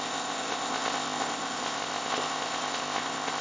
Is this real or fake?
fake